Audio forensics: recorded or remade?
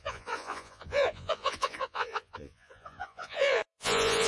remade